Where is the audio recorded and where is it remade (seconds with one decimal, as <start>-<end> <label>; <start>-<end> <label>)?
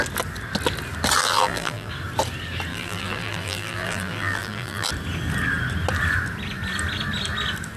0.0-1.2 recorded; 1.2-1.9 remade; 1.9-2.7 recorded; 2.7-4.9 remade; 4.9-7.8 recorded